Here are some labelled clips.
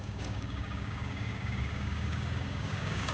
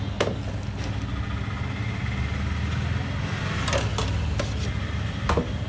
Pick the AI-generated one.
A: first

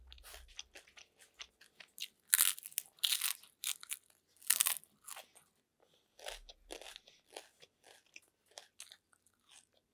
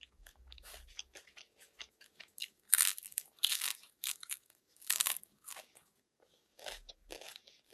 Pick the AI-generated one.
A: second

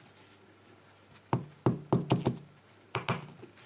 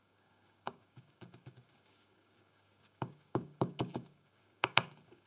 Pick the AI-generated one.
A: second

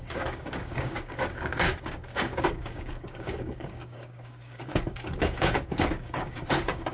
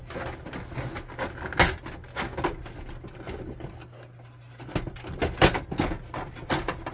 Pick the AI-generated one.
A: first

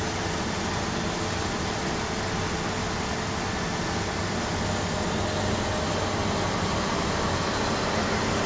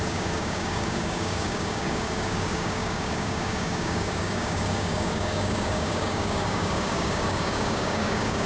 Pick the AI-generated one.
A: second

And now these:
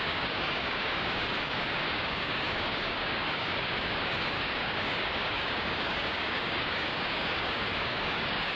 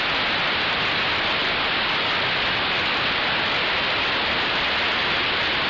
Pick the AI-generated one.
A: first